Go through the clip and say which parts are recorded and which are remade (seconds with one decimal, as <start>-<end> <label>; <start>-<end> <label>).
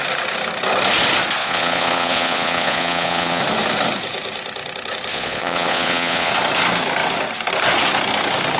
0.0-1.4 recorded; 1.4-3.4 remade; 3.4-5.1 recorded; 5.1-6.3 remade; 6.3-8.6 recorded